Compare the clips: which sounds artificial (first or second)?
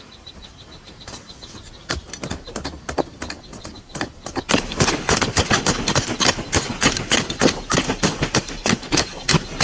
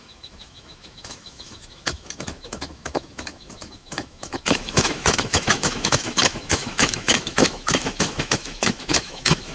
second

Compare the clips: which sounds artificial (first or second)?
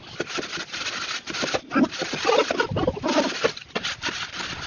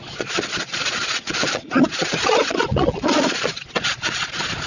second